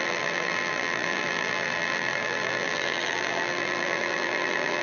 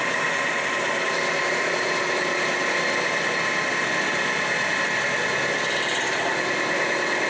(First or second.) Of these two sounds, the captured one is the second